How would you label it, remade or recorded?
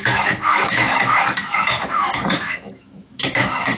remade